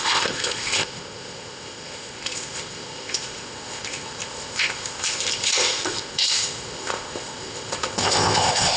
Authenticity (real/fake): fake